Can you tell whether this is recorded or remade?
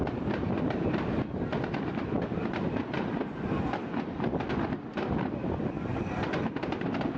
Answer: remade